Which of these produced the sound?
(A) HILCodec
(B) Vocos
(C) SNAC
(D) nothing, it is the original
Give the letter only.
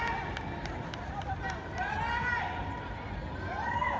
D